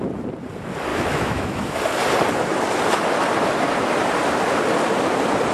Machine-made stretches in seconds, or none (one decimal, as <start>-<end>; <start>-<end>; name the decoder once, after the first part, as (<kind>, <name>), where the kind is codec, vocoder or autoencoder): 0.9-1.8 (autoencoder, DAC-VAE)